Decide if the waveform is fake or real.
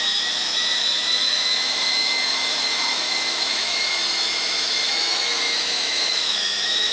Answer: fake